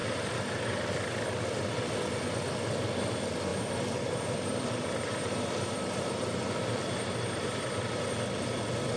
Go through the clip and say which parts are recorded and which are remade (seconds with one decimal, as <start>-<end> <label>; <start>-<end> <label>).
0.0-0.9 remade; 0.9-3.5 recorded; 3.5-8.1 remade; 8.1-9.0 recorded